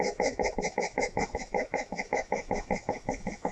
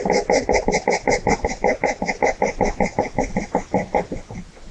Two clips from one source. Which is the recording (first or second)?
second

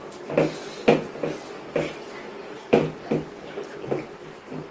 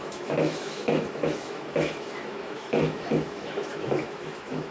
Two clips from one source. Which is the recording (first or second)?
first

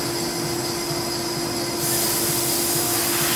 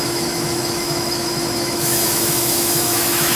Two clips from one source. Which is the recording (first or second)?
first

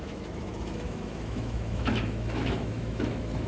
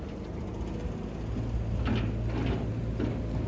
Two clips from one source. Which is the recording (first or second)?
second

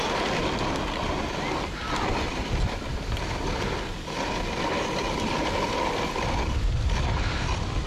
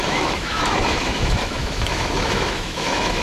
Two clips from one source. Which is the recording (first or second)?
first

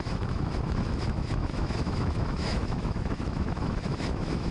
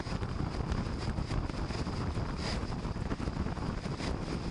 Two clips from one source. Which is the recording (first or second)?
second